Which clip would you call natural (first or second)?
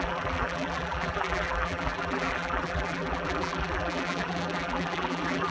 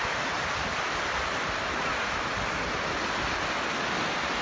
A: second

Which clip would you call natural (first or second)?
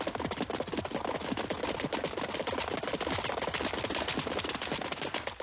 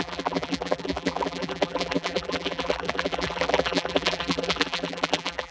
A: first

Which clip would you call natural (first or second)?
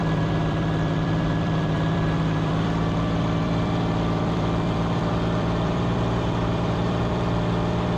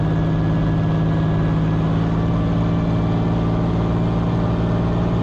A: second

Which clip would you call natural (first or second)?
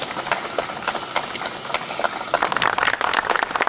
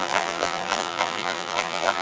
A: first